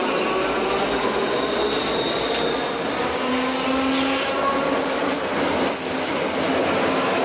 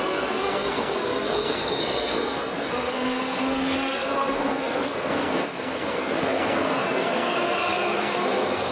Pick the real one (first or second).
first